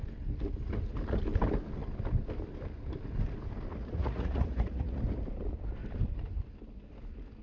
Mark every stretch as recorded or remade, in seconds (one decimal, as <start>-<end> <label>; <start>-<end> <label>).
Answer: 0.0-3.8 recorded; 3.8-5.0 remade; 5.0-7.4 recorded